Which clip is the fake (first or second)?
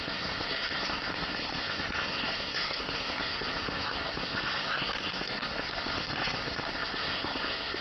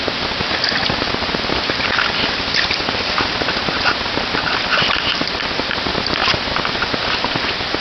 first